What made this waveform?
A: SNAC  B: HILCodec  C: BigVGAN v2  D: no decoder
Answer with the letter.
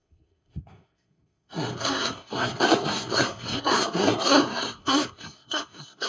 A